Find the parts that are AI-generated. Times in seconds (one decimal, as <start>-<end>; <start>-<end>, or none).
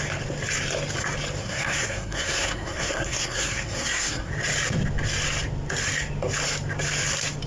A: 1.4-4.3